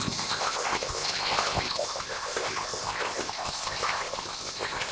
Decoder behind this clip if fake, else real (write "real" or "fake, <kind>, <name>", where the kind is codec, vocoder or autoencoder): fake, codec, ZipCodec